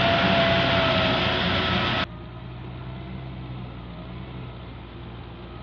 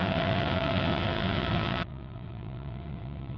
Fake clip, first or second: second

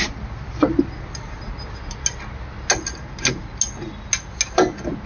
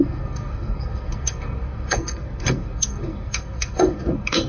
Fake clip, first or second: second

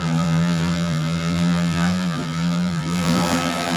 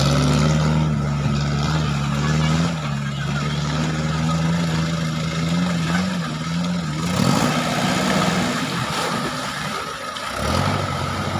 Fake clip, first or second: first